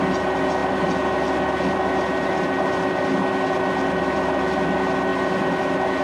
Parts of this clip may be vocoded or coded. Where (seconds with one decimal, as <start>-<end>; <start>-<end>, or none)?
none